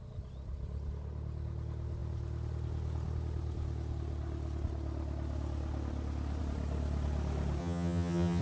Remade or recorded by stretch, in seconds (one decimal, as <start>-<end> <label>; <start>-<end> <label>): 0.0-7.6 recorded; 7.6-8.4 remade